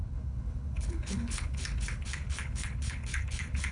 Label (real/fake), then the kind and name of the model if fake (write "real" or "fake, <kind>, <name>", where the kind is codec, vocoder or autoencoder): fake, codec, HILCodec